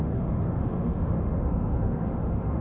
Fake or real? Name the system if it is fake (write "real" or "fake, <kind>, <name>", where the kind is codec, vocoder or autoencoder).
fake, autoencoder, DAC-VAE